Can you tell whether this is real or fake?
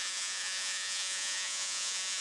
fake